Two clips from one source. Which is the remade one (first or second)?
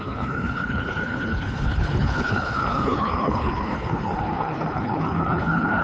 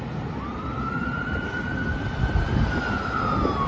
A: first